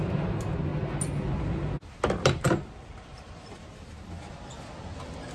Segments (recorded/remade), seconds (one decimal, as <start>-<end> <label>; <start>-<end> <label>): 0.0-5.3 recorded